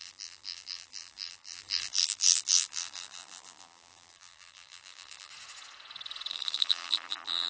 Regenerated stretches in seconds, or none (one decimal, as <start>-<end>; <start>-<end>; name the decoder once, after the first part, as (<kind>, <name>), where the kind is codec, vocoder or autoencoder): 0.0-5.3 (vocoder, BigVGAN v2); 6.3-7.5